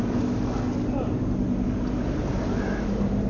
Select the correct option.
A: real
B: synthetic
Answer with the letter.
A